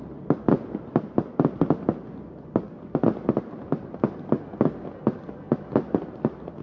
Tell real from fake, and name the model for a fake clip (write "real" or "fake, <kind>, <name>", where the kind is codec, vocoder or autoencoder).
real